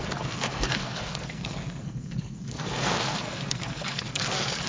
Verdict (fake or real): fake